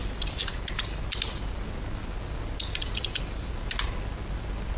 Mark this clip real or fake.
real